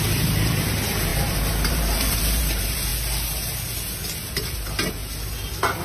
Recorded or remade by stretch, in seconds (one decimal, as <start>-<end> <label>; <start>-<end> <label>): 0.0-2.9 remade; 2.9-4.3 recorded; 4.3-5.0 remade; 5.0-5.8 recorded